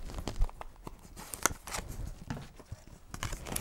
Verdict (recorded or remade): recorded